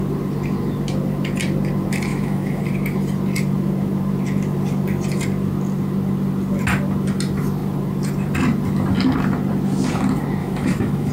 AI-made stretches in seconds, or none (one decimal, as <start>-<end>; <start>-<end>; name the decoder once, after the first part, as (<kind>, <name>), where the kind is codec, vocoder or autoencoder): 2.1-2.6 (autoencoder, DAC-VAE); 10.4-11.1